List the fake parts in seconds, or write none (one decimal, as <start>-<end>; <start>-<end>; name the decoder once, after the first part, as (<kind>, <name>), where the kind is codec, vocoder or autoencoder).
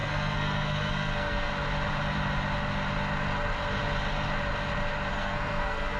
0.0-1.5 (codec, SNAC); 5.1-6.0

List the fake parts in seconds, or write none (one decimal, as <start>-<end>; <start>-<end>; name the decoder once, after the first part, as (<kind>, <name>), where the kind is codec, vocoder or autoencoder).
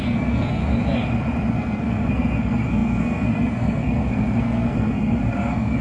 0.0-0.6 (codec, SNAC); 1.5-5.8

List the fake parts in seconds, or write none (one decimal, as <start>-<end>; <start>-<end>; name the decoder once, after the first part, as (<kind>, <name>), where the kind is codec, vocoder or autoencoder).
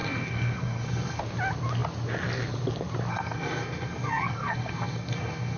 0.0-1.2 (codec, SNAC); 3.1-5.6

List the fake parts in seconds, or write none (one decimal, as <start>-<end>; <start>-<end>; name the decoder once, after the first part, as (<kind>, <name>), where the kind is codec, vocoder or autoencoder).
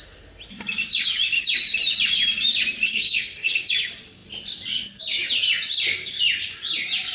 2.9-3.7 (codec, SNAC)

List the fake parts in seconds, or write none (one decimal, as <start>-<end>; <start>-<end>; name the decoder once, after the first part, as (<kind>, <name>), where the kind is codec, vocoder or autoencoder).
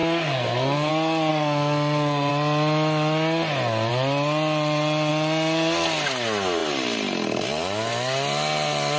0.0-0.9 (codec, SNAC); 1.3-2.3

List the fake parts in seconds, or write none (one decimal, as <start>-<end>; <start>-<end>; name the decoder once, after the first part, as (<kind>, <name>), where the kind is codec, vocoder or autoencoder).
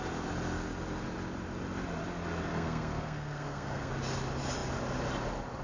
2.5-3.9 (codec, SNAC)